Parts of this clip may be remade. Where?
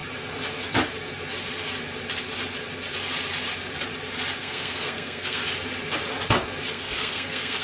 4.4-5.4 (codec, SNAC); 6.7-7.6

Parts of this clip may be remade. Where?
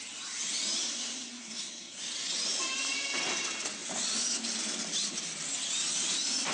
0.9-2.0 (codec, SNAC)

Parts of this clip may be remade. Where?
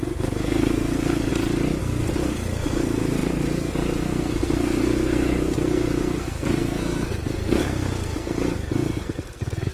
0.0-1.3 (codec, SNAC); 1.8-9.7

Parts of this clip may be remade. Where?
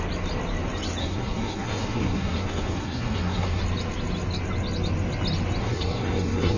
1.0-3.6 (codec, SNAC); 5.6-6.6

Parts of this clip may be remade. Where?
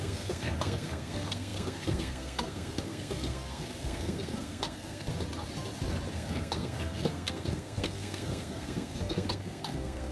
0.0-5.1 (codec, SNAC); 6.1-10.1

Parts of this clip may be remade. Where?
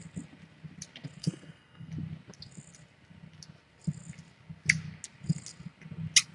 1.2-1.9 (codec, SNAC)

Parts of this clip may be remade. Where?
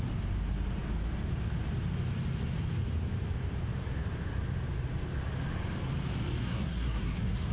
6.4-7.5 (codec, SNAC)